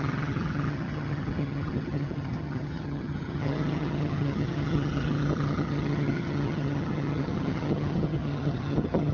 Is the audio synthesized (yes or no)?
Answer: yes